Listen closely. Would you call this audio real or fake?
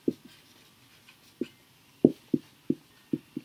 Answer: real